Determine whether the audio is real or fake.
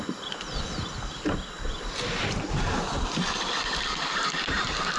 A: real